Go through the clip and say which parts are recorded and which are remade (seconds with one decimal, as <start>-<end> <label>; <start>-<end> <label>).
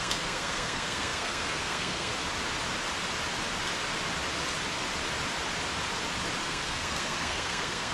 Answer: 0.0-2.1 remade; 2.1-6.4 recorded; 6.4-7.9 remade